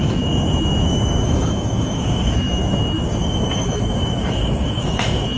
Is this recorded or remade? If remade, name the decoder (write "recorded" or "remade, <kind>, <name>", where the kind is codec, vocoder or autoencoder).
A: remade, autoencoder, DAC-VAE